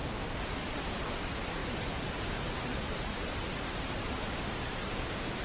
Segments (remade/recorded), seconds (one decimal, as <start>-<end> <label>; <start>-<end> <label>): 0.0-5.4 recorded